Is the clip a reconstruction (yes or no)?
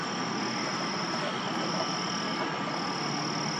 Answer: no